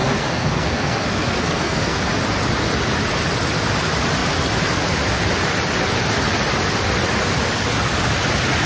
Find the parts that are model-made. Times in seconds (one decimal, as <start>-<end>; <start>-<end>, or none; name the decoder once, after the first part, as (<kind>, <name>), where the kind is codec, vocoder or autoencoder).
0.0-2.1 (codec, SNAC)